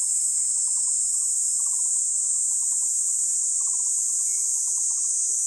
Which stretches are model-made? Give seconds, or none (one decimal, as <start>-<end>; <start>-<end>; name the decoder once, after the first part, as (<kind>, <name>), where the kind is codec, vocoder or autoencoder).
none